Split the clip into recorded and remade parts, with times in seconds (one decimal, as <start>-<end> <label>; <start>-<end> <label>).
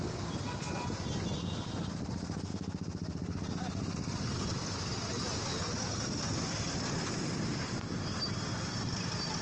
0.0-9.4 recorded